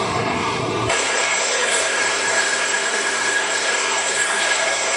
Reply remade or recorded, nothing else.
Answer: remade